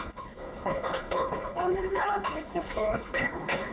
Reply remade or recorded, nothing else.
remade